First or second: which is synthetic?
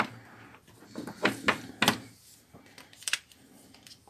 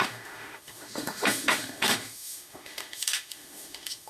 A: second